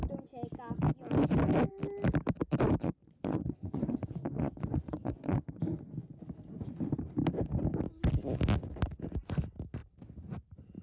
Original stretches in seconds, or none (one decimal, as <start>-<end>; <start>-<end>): 0.0-2.8; 5.6-10.8